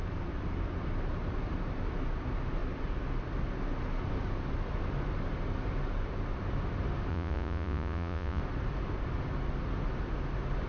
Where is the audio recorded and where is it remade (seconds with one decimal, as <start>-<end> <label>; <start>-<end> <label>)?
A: 0.0-7.1 recorded; 7.1-8.4 remade; 8.4-10.7 recorded